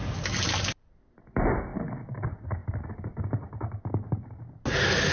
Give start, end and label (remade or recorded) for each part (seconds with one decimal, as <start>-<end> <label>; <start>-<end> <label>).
0.0-0.9 remade; 0.9-5.1 recorded